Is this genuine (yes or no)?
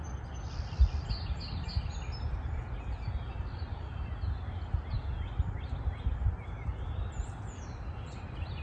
yes